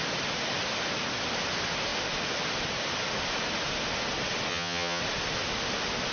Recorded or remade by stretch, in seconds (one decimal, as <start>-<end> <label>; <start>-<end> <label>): 0.0-4.5 recorded; 4.5-5.0 remade; 5.0-6.1 recorded